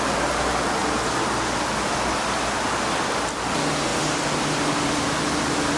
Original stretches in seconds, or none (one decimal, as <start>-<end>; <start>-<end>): 0.0-5.8